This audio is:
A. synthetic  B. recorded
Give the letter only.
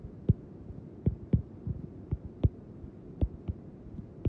B